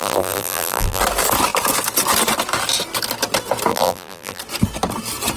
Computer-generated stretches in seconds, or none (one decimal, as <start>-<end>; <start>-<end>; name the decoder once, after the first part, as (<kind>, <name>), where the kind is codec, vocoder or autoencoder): 0.0-1.0 (vocoder, BigVGAN v2); 3.7-4.4